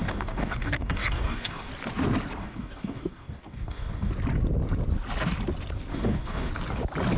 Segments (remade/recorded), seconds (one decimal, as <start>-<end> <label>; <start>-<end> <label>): 0.0-1.7 remade; 1.7-2.4 recorded; 2.4-4.1 remade; 4.1-5.9 recorded; 5.9-6.5 remade; 6.5-7.2 recorded